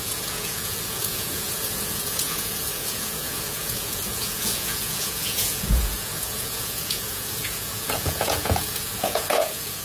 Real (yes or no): no